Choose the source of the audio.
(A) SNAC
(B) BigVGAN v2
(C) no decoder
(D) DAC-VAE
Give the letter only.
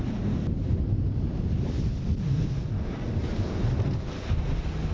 C